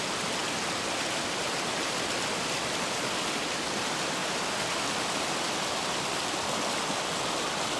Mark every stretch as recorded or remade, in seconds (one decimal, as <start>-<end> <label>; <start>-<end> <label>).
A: 0.0-7.8 recorded